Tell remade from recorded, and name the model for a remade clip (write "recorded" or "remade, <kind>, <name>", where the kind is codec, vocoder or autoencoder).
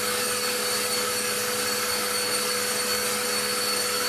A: remade, codec, DAC